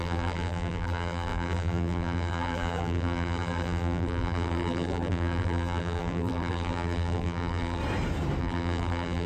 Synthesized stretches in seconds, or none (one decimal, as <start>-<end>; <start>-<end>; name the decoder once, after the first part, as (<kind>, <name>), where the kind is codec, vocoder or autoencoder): 0.0-7.8 (vocoder, BigVGAN v2); 8.4-9.3